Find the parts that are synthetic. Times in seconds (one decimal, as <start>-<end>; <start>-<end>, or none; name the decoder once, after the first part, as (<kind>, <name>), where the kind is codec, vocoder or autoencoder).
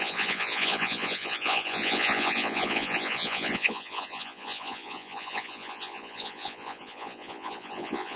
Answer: 0.0-8.2 (vocoder, Vocos)